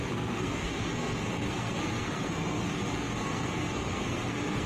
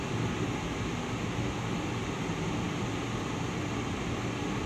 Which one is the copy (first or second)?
first